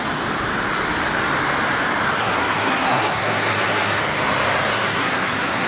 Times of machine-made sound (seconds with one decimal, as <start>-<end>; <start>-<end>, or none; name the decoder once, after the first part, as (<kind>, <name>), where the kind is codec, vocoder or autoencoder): 2.2-4.0 (codec, SNAC); 4.7-5.7